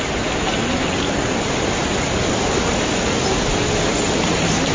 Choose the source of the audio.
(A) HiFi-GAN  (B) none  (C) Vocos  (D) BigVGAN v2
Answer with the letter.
B